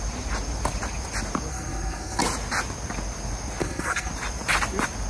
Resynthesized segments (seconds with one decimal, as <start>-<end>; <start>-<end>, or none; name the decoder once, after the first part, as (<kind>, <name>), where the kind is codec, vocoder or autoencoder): 1.5-2.2 (codec, SNAC); 3.6-4.1